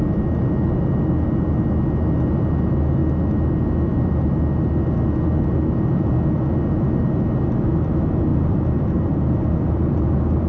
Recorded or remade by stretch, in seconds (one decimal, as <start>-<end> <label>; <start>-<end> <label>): 0.0-8.3 recorded; 8.3-10.5 remade